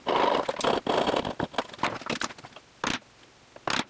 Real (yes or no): yes